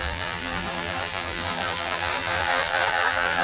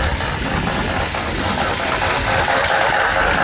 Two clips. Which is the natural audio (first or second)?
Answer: second